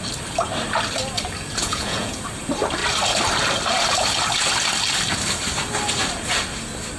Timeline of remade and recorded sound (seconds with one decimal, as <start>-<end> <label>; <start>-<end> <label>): 0.0-1.6 recorded; 1.6-2.2 remade; 2.2-7.0 recorded